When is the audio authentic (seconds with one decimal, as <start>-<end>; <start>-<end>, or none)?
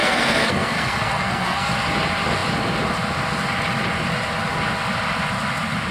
1.7-5.9